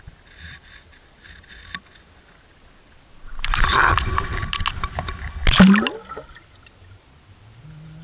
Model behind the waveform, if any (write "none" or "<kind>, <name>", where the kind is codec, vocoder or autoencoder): none